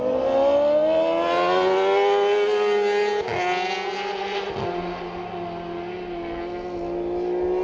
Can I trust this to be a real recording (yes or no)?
yes